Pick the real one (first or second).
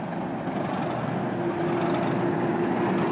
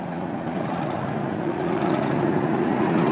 first